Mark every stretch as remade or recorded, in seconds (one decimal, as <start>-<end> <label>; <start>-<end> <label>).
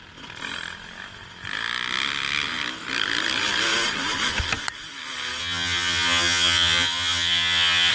0.0-5.4 recorded; 5.4-7.9 remade